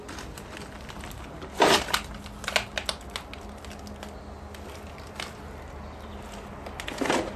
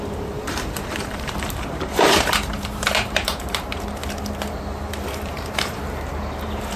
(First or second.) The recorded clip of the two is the first